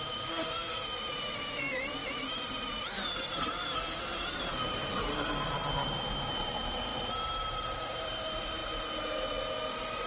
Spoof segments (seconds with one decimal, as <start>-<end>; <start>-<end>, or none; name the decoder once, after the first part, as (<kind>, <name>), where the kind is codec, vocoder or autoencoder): 0.0-5.6 (vocoder, BigVGAN v2); 6.4-8.6; 9.7-10.1